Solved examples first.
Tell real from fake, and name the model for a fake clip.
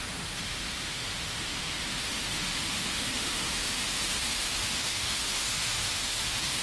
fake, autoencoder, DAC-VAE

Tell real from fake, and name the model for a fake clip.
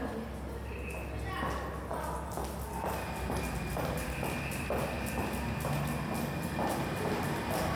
real